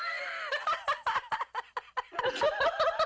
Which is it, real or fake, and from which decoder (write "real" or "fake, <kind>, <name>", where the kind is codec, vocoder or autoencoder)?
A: real